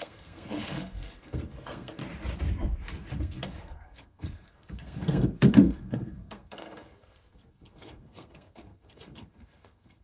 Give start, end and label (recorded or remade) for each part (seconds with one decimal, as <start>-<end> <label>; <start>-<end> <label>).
0.0-2.0 remade; 2.0-3.2 recorded; 3.2-10.0 remade

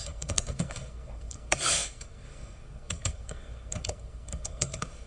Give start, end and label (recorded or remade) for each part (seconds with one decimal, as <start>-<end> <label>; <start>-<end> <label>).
0.0-5.1 remade

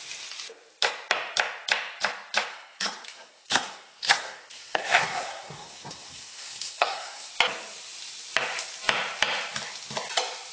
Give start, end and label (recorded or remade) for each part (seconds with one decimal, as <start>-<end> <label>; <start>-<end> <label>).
0.0-2.5 recorded; 2.5-7.3 remade; 7.3-10.5 recorded

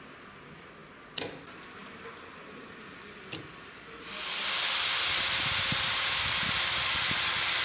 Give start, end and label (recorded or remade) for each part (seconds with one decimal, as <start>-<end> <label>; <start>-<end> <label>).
0.0-7.6 recorded

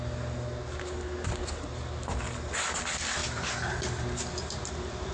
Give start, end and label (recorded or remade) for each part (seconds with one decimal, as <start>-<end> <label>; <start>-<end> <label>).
0.0-5.1 recorded